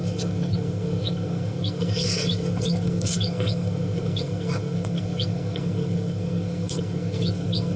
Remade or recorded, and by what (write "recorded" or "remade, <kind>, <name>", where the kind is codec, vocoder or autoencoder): remade, codec, SNAC